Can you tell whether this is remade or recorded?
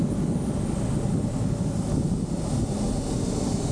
recorded